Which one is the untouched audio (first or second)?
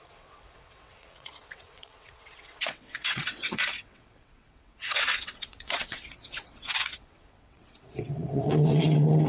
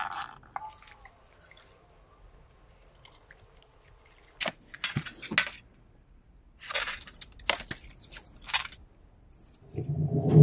second